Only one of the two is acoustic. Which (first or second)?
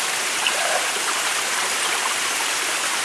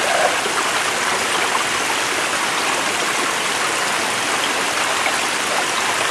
second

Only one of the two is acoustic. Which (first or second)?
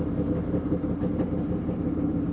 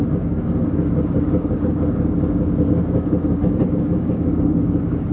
first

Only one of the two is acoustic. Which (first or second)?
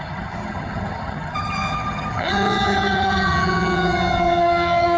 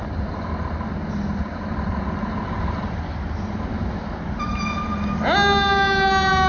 second